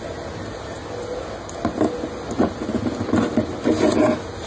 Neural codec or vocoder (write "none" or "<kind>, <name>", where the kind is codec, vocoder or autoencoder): none